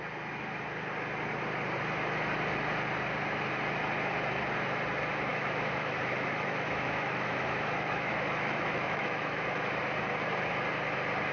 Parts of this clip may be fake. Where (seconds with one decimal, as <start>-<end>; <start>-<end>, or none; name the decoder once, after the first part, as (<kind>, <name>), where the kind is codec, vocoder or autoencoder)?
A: 5.3-9.7 (autoencoder, DAC-VAE)